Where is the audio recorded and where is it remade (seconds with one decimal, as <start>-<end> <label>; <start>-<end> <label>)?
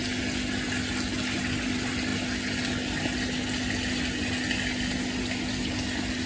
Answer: 0.0-6.3 recorded